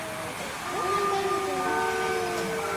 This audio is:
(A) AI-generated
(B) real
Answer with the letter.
B